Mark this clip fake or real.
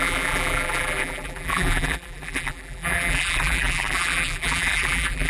fake